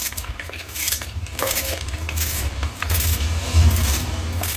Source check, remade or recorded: remade